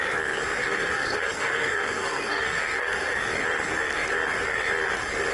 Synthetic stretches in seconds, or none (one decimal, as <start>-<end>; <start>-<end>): 0.6-3.2